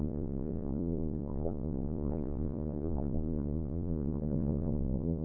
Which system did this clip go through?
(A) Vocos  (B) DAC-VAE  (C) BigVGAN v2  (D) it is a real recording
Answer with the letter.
A